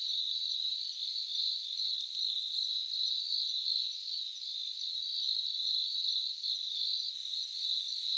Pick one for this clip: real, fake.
real